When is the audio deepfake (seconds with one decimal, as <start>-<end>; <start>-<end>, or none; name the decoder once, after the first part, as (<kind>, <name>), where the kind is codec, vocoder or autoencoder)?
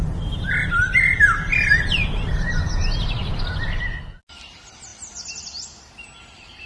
none